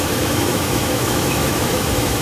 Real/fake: fake